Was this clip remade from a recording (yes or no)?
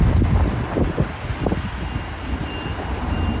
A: no